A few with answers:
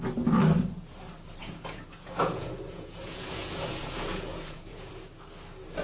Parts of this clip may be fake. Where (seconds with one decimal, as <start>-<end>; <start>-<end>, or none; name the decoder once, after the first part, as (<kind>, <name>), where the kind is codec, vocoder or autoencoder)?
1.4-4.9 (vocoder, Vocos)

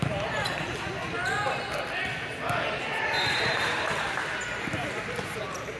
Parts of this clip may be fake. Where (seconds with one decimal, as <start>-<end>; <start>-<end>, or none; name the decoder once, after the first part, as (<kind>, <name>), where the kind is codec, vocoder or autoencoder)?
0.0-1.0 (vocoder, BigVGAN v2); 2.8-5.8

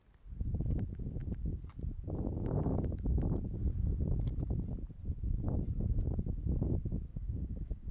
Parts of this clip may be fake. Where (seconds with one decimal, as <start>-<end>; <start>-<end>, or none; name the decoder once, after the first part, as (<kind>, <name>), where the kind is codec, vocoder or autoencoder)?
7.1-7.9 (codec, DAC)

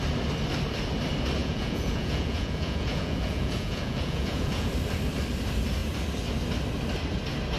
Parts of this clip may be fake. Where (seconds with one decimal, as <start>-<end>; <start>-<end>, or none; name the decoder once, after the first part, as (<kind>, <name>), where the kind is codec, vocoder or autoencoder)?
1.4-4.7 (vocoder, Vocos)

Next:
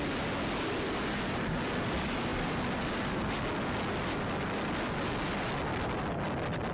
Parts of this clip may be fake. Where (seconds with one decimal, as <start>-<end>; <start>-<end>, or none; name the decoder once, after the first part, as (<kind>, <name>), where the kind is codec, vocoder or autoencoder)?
none

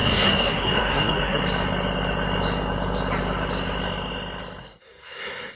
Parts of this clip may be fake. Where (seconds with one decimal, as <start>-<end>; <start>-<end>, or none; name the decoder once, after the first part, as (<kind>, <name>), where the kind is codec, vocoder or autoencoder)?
0.0-1.4 (codec, SNAC); 4.6-5.6

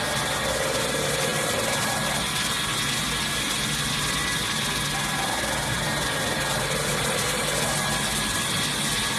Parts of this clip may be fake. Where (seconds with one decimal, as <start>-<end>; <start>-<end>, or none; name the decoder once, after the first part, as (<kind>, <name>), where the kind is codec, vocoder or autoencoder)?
none